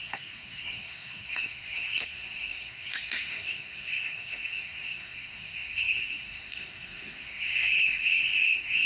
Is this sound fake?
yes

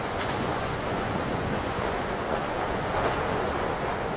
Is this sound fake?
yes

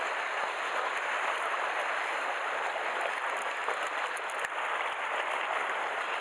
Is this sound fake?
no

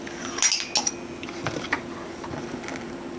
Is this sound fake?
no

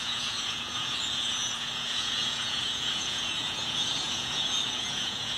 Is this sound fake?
yes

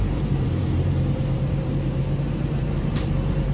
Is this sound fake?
yes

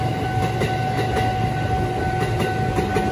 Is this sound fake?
no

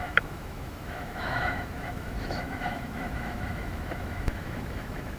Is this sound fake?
yes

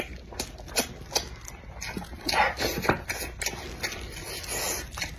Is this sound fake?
no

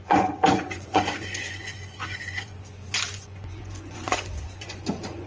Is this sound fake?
yes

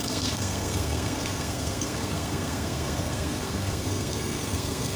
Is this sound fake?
yes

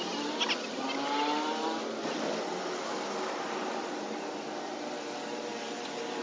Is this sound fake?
no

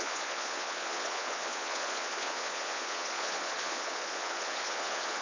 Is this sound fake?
yes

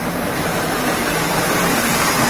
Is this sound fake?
yes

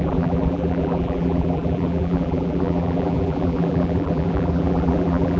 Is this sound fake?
yes